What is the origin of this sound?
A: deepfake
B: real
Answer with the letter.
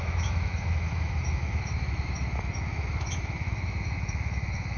A